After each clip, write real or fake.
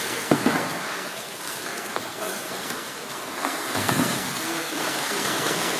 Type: fake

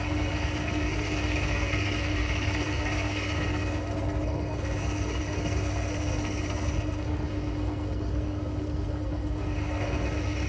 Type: fake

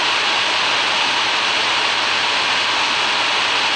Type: real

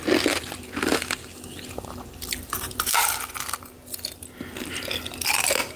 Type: real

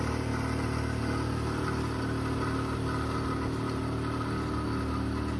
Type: real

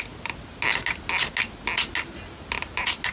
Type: real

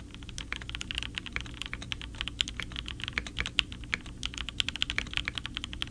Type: real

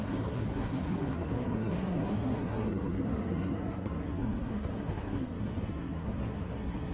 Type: fake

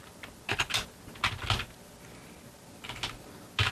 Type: real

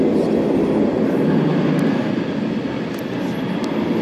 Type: real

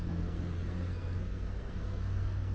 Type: fake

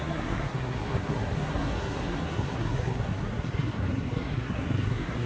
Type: fake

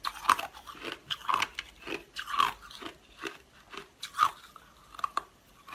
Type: real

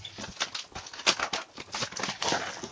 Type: real